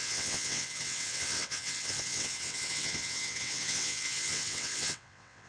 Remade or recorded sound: remade